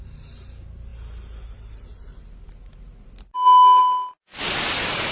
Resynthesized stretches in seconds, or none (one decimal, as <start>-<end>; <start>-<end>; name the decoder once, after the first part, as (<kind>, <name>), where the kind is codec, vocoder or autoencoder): none